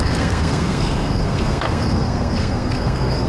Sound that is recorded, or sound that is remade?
remade